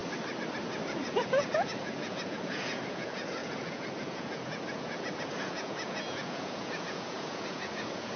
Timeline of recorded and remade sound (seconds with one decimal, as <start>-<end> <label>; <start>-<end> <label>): 0.0-0.8 recorded; 0.8-8.2 remade